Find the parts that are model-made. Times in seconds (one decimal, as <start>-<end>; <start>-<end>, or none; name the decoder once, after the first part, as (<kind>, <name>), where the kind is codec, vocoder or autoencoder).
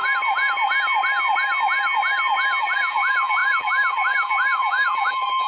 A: 2.6-5.5 (vocoder, BigVGAN v2)